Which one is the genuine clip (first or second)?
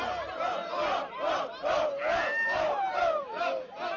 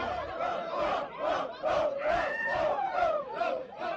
first